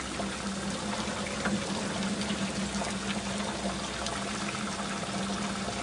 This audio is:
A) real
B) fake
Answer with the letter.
A